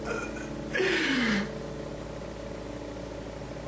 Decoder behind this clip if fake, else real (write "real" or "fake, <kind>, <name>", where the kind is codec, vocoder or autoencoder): real